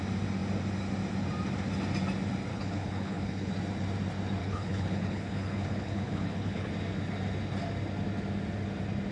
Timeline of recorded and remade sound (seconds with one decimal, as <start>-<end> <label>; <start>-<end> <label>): 0.0-2.5 recorded; 2.5-3.5 remade; 3.5-4.4 recorded; 4.4-6.7 remade; 6.7-9.1 recorded